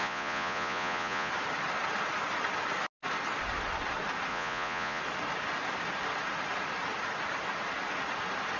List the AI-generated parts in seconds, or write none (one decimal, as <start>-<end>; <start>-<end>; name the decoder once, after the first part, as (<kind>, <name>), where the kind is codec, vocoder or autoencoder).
0.0-1.3 (vocoder, Vocos); 4.3-5.0